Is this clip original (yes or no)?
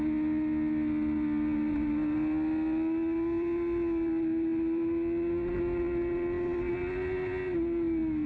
yes